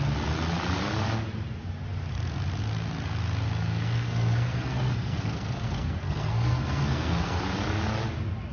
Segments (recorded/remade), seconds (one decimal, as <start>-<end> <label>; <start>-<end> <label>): 0.0-3.7 recorded; 3.7-7.4 remade; 7.4-8.5 recorded